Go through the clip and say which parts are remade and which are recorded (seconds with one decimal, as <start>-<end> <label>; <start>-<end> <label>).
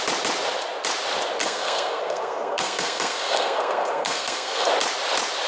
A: 0.0-1.4 recorded; 1.4-4.7 remade; 4.7-5.5 recorded